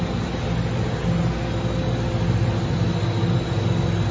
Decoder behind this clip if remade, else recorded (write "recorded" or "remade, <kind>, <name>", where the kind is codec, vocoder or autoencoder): recorded